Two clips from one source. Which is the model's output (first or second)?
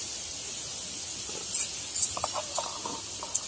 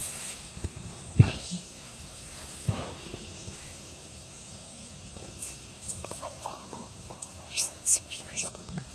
second